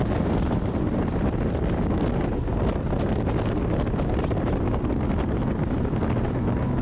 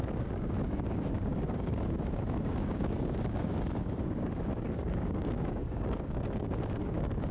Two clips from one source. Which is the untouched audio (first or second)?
first